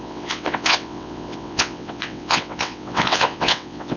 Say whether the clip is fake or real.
fake